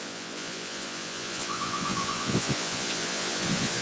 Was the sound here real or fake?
fake